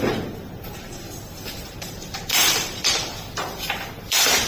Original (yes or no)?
no